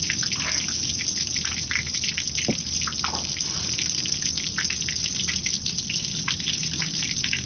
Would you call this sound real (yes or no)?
yes